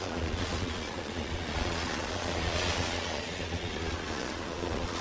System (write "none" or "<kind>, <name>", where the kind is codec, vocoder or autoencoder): vocoder, Vocos